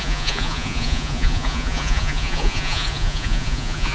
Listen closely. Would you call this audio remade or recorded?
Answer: remade